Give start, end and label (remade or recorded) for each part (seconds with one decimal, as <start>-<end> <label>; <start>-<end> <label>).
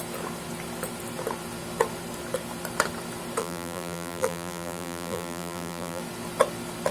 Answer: 0.0-3.4 recorded; 3.4-6.0 remade; 6.0-6.9 recorded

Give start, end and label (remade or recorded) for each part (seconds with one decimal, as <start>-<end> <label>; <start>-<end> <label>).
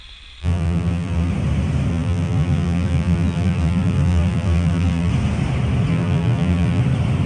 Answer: 0.0-0.4 recorded; 0.4-1.3 remade; 1.3-1.9 recorded; 1.9-5.1 remade; 5.1-5.9 recorded; 5.9-6.8 remade; 6.8-7.3 recorded